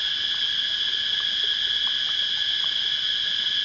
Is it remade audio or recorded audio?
recorded